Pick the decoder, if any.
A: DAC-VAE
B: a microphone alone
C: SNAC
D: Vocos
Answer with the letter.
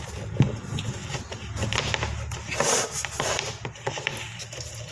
B